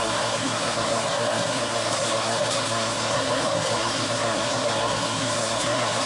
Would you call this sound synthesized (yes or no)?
yes